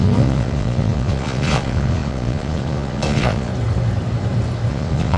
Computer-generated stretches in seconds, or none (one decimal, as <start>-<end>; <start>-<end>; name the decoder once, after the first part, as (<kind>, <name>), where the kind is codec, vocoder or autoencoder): 0.0-3.5 (vocoder, Vocos); 4.7-5.2